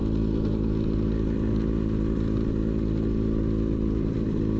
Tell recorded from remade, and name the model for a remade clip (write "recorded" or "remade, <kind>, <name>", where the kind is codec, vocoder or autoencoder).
recorded